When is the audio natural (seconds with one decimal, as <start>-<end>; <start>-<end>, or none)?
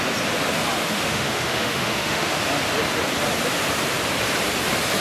0.0-0.8; 2.4-5.0